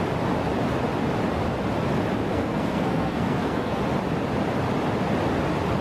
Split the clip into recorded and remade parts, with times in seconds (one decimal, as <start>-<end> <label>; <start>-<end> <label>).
0.0-2.3 recorded; 2.3-3.8 remade; 3.8-5.8 recorded

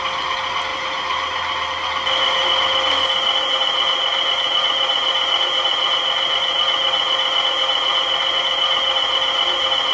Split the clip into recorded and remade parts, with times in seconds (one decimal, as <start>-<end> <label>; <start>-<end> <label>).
0.0-0.7 recorded; 0.7-1.7 remade; 1.7-9.9 recorded

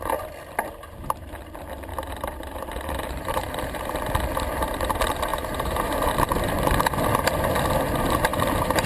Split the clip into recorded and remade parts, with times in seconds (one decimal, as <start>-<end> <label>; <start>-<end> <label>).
0.0-1.9 recorded; 1.9-3.9 remade; 3.9-5.3 recorded; 5.3-6.1 remade; 6.1-8.3 recorded; 8.3-8.9 remade

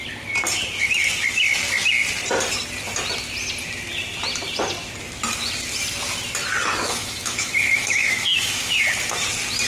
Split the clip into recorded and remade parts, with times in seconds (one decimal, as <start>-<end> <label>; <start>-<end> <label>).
0.0-6.8 recorded; 6.8-8.8 remade; 8.8-9.7 recorded

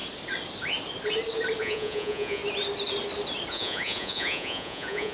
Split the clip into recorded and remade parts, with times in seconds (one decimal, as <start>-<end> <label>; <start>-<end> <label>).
0.0-1.6 recorded; 1.6-2.4 remade; 2.4-3.5 recorded; 3.5-5.1 remade